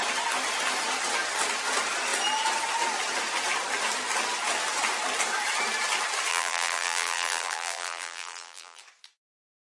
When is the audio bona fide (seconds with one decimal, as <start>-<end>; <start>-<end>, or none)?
0.0-6.3; 8.8-9.7